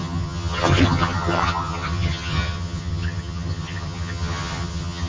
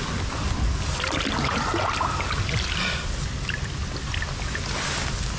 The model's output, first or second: first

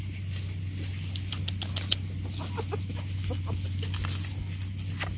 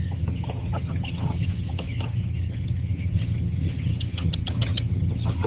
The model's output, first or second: second